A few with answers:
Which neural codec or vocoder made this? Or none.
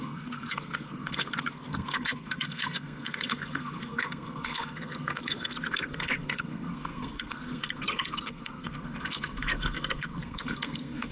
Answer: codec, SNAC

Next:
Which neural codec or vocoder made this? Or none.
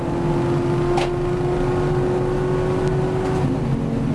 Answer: none